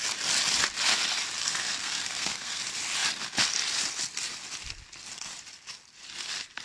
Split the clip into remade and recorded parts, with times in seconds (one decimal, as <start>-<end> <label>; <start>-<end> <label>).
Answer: 0.0-1.4 recorded; 1.4-2.6 remade; 2.6-6.6 recorded